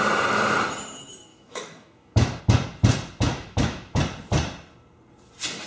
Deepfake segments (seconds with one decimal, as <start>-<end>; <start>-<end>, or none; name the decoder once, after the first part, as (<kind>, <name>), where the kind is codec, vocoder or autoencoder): 1.3-2.4 (autoencoder, DAC-VAE); 3.3-4.0